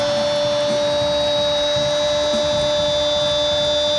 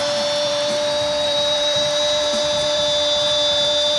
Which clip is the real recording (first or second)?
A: first